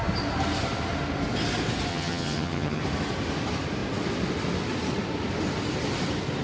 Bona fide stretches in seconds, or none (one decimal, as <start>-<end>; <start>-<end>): 0.0-1.9; 2.8-6.4